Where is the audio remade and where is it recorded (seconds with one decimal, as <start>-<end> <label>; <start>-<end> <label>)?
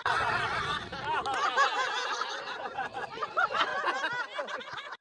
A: 0.0-0.9 remade; 0.9-2.1 recorded; 2.1-3.7 remade; 3.7-4.5 recorded; 4.5-5.0 remade